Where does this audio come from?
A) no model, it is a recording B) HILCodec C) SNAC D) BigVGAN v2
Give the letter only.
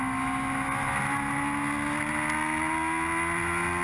A